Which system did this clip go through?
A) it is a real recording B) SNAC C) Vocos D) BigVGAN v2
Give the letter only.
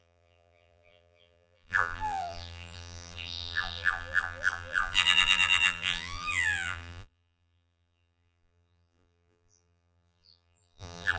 D